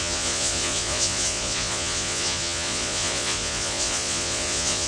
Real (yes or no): no